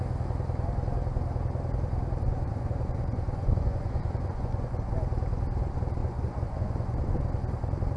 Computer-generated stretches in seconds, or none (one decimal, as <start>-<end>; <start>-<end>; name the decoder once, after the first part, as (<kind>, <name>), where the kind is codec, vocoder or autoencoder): 2.2-4.9 (vocoder, Vocos); 6.0-7.1